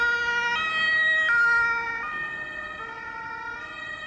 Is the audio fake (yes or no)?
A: no